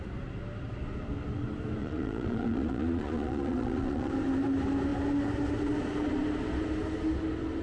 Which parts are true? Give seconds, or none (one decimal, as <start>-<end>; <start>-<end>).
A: 0.0-1.8; 4.1-7.6